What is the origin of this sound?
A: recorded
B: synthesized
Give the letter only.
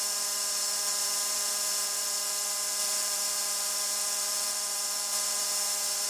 B